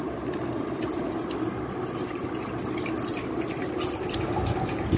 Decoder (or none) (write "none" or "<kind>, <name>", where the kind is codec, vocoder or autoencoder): none